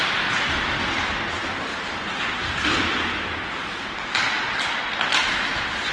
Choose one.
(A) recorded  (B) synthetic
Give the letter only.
B